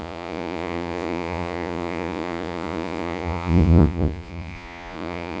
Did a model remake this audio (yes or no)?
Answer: yes